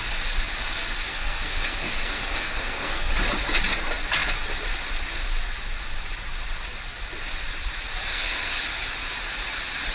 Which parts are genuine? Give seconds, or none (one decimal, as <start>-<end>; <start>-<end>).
0.0-1.1; 3.1-8.1; 8.6-9.9